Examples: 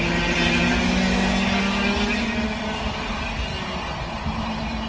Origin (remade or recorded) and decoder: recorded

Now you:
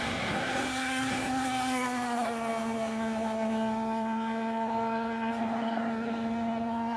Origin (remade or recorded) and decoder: remade, codec, SNAC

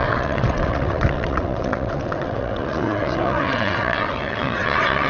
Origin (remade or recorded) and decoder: remade, vocoder, WaveNeXt